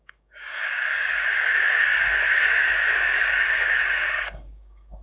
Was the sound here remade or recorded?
remade